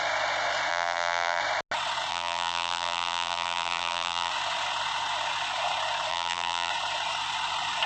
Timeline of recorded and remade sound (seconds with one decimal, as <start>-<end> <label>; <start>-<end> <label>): 0.0-0.7 recorded; 0.7-1.4 remade; 1.4-2.1 recorded; 2.1-4.3 remade; 4.3-6.1 recorded; 6.1-6.7 remade; 6.7-7.9 recorded